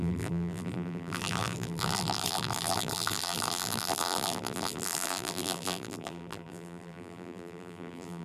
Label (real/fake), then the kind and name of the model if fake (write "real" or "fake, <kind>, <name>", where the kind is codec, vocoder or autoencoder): fake, vocoder, BigVGAN v2